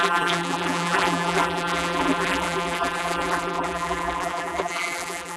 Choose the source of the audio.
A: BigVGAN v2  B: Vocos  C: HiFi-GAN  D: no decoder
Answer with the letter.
A